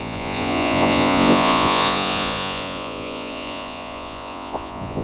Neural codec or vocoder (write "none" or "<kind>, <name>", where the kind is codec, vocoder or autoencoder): vocoder, Vocos